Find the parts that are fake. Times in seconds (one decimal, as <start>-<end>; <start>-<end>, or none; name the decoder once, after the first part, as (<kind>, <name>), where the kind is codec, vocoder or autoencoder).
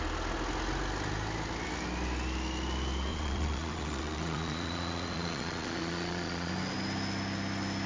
3.1-6.5 (vocoder, Vocos)